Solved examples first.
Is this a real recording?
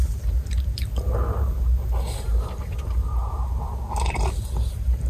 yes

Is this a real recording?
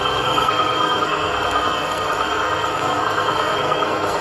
no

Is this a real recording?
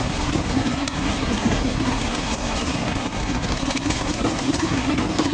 no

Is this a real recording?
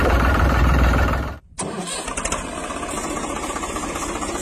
no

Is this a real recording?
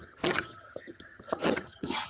no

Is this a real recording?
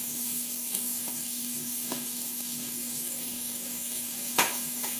no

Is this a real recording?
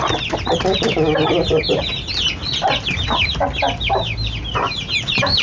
yes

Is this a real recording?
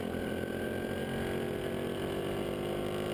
yes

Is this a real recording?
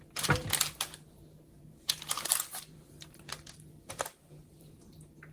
no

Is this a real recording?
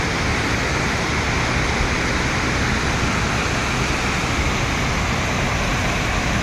yes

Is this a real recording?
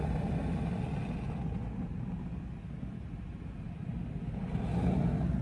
yes